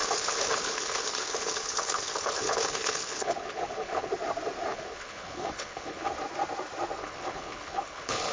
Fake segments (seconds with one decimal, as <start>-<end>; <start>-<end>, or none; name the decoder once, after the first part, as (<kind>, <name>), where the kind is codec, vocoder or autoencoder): 0.0-4.1 (codec, HILCodec); 4.7-6.1; 7.0-8.3